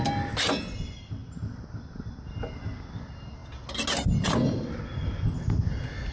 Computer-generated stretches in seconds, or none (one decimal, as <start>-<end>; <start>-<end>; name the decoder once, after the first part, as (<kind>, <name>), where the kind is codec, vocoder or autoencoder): none

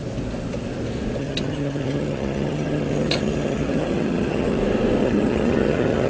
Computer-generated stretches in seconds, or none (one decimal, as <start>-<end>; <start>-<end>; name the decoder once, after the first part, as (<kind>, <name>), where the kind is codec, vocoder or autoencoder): 1.2-4.6 (vocoder, HiFi-GAN); 5.0-6.1